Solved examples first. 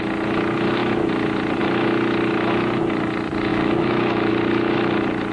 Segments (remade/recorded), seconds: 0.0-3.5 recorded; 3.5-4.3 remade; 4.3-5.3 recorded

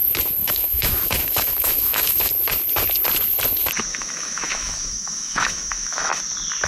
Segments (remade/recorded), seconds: 0.0-0.4 recorded; 0.4-2.3 remade; 2.3-3.9 recorded; 3.9-6.2 remade; 6.2-6.7 recorded

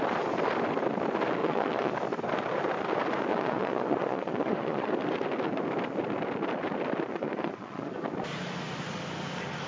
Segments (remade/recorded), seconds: 0.0-1.4 recorded; 1.4-1.9 remade; 1.9-3.3 recorded; 3.3-4.9 remade; 4.9-7.1 recorded; 7.1-7.9 remade; 7.9-9.7 recorded